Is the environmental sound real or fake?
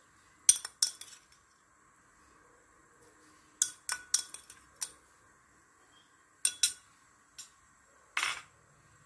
real